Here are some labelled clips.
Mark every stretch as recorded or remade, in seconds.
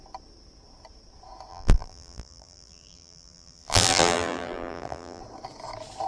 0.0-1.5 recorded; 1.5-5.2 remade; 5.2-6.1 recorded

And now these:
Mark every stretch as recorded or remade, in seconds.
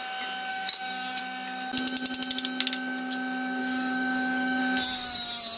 0.0-0.5 recorded; 0.5-1.2 remade; 1.2-3.6 recorded; 3.6-4.6 remade; 4.6-5.6 recorded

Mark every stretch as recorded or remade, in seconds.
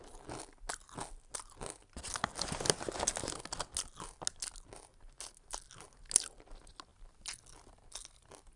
0.0-8.6 recorded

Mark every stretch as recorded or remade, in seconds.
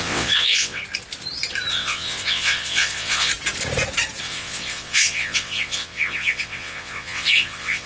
0.0-0.8 remade; 0.8-1.7 recorded; 1.7-3.3 remade; 3.3-4.2 recorded; 4.2-7.9 remade